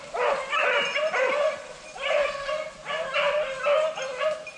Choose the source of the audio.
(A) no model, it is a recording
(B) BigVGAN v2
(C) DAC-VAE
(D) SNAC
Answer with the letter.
A